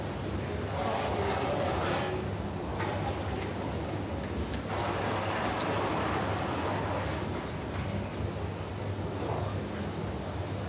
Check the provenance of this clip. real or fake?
real